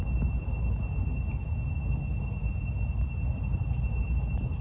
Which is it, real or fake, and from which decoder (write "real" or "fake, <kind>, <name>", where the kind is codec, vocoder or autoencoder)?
real